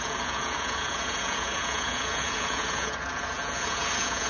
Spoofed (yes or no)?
yes